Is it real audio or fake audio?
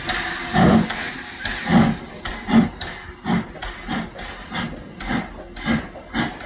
real